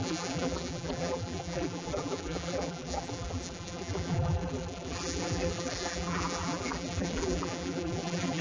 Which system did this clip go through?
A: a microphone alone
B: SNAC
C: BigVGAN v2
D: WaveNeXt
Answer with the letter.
C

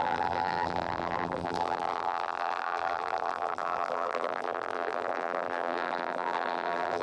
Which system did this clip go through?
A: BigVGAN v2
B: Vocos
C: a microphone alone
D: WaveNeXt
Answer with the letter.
A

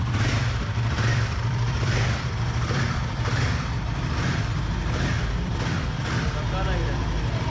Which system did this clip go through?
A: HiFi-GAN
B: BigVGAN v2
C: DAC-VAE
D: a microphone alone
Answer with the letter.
B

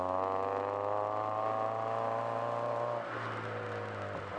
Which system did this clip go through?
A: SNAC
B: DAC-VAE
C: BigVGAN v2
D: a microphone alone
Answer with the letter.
D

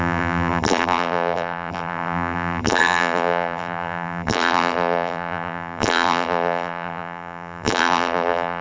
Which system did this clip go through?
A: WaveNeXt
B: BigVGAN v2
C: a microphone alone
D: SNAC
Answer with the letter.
B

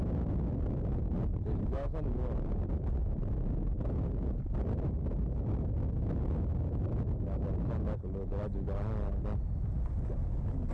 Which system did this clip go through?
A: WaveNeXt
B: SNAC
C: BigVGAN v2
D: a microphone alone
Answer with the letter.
D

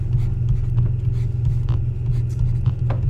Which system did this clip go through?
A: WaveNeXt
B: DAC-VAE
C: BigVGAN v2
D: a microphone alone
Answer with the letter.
D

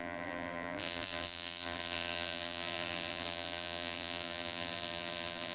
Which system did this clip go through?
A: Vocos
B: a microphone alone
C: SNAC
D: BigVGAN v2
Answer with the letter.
D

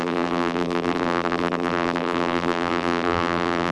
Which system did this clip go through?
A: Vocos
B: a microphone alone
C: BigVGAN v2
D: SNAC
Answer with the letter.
C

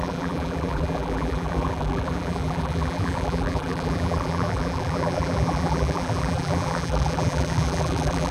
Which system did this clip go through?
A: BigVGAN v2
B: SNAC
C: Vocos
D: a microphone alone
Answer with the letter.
A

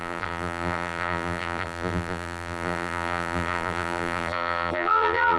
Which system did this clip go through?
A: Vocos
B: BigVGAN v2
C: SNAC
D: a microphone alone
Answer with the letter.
B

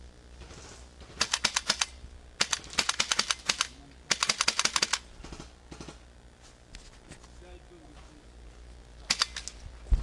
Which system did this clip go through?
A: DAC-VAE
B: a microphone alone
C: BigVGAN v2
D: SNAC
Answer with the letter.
B